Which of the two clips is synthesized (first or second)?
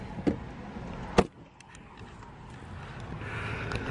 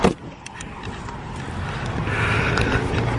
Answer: second